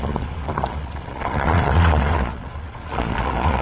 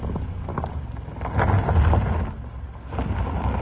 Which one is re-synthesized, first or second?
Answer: first